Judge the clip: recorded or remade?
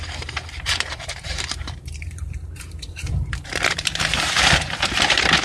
remade